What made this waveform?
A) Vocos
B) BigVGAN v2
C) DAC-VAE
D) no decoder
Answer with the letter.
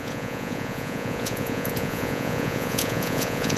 A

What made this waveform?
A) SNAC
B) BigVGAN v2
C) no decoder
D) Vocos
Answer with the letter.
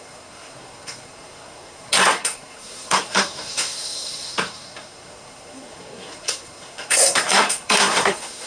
A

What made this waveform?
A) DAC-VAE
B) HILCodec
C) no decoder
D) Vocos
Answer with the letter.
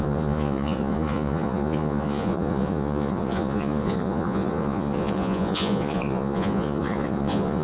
D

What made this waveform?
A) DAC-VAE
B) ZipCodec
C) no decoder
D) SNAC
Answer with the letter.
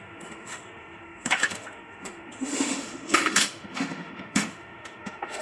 A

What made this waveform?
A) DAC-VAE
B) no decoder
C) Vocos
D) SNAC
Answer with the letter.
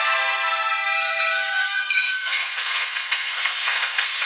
D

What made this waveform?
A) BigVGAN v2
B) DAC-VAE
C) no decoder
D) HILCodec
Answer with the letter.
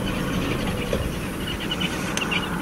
C